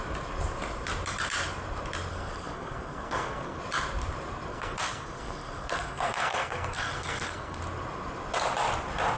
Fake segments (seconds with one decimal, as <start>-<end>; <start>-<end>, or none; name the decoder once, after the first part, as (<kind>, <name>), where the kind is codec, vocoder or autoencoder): 2.1-3.6 (codec, SNAC); 4.5-7.6